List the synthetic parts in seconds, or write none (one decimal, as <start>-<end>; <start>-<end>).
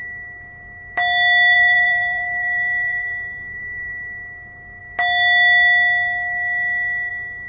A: 1.5-3.9